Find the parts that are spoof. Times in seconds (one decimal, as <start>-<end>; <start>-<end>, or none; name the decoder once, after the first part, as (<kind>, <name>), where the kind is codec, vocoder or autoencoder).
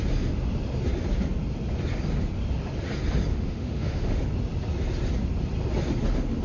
3.3-4.2 (autoencoder, DAC-VAE)